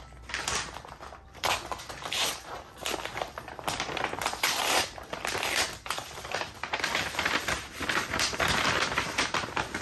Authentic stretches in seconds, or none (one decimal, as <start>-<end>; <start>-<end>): none